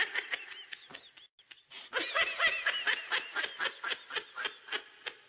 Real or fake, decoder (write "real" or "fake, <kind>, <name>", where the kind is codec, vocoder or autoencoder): real